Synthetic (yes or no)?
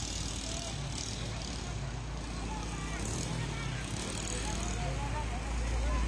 no